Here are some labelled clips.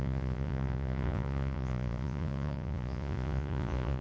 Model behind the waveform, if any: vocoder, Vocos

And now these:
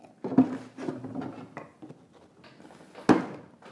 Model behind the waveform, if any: none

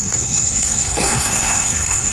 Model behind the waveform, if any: codec, SNAC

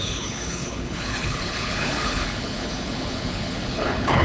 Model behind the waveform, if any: codec, HILCodec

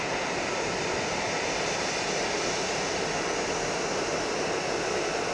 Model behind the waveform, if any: none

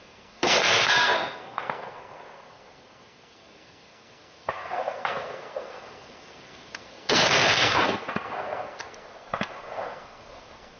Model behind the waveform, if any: codec, SNAC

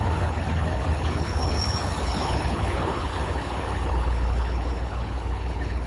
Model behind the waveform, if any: codec, HILCodec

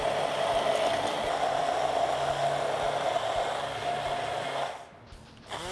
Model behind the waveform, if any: none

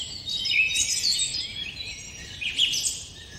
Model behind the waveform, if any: vocoder, BigVGAN v2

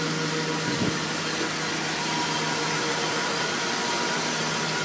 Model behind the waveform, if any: none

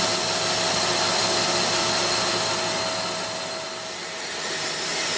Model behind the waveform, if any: none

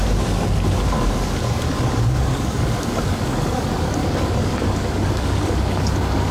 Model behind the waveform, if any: codec, DAC